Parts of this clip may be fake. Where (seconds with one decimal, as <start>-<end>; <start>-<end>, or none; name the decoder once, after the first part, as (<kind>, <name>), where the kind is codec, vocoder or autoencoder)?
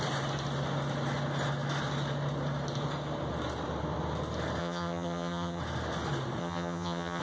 4.6-5.6 (vocoder, HiFi-GAN); 6.4-7.2